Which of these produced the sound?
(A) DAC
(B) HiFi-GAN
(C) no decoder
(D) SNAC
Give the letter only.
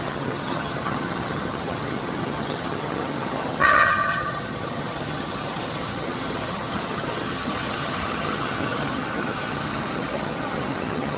B